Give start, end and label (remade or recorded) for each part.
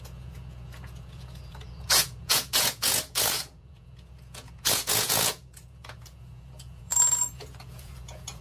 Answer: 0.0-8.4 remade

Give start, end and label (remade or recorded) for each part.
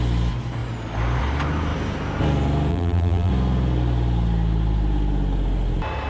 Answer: 0.0-2.7 recorded; 2.7-3.3 remade; 3.3-6.1 recorded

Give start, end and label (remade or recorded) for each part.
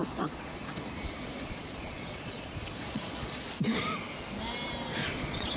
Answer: 0.0-3.4 remade; 3.4-5.0 recorded; 5.0-5.6 remade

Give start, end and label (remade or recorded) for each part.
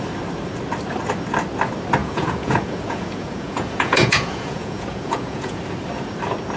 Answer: 0.0-2.0 recorded; 2.0-5.6 remade; 5.6-6.6 recorded